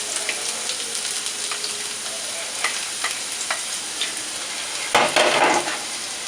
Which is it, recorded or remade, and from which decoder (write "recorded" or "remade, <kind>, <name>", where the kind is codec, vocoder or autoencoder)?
recorded